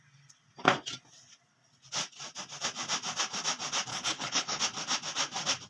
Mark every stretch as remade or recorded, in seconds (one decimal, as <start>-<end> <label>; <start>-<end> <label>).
0.0-3.9 recorded; 3.9-4.6 remade; 4.6-5.7 recorded

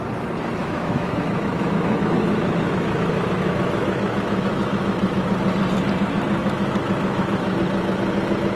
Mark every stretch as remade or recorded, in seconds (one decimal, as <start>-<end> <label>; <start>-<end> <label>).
0.0-0.6 recorded; 0.6-5.3 remade; 5.3-6.4 recorded; 6.4-7.6 remade; 7.6-8.6 recorded